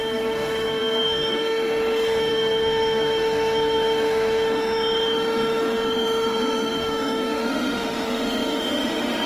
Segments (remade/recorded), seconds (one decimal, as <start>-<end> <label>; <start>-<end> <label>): 0.0-9.3 remade